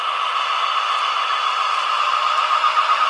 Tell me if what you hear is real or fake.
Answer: real